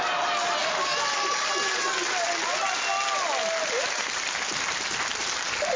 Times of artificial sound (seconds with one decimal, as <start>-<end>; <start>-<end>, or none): none